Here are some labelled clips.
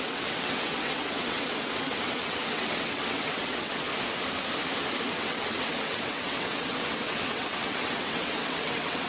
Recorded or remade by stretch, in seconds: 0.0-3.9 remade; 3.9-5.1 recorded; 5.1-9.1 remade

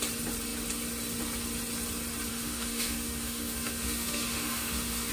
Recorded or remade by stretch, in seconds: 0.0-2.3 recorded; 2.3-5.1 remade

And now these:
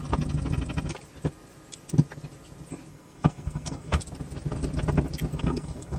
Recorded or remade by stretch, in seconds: 0.0-2.9 recorded; 2.9-4.0 remade; 4.0-5.3 recorded; 5.3-6.0 remade

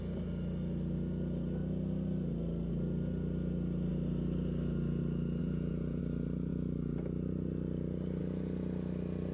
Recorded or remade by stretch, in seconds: 0.0-5.4 recorded; 5.4-6.0 remade; 6.0-9.3 recorded

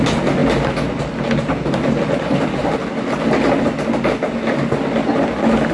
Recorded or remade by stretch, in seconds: 0.0-5.7 recorded

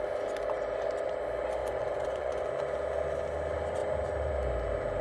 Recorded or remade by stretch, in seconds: 0.0-1.6 recorded; 1.6-2.5 remade; 2.5-5.0 recorded